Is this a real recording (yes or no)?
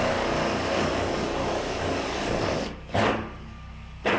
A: no